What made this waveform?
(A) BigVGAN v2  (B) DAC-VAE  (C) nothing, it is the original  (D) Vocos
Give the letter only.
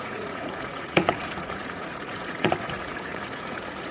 D